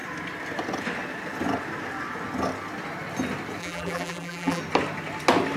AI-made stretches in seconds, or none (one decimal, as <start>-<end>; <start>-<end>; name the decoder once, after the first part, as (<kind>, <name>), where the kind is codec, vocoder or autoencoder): 3.6-4.6 (vocoder, BigVGAN v2)